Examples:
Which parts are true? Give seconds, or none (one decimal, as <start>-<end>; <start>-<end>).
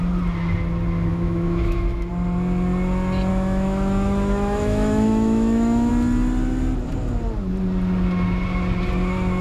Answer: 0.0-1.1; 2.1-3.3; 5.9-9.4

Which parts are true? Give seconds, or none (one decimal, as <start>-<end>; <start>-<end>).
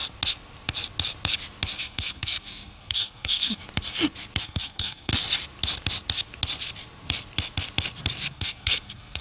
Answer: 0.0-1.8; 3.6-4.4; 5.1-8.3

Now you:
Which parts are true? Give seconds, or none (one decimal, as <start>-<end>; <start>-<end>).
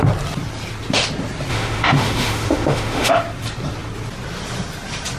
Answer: 0.0-1.5; 3.1-5.2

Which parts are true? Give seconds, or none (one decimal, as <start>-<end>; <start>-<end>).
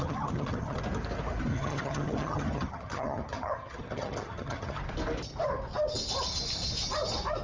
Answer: 0.8-1.5; 4.8-7.4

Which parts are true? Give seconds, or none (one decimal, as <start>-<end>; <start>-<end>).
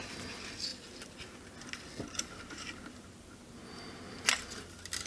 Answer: 0.0-5.1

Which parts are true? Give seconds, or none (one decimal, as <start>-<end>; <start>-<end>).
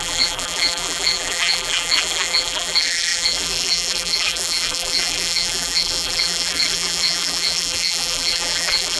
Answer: none